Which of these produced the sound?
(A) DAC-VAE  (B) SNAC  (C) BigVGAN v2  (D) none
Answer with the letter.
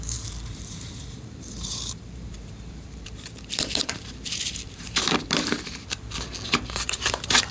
C